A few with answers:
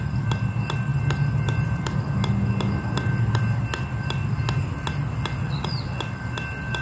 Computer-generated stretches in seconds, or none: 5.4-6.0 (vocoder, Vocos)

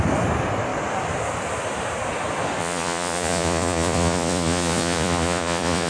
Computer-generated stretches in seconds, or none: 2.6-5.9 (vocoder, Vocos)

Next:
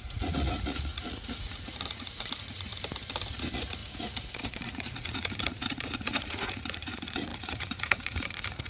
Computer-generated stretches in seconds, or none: 0.0-2.7 (vocoder, Vocos); 3.3-8.7